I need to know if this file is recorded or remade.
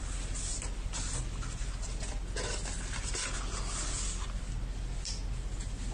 recorded